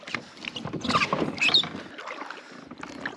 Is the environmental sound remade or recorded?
recorded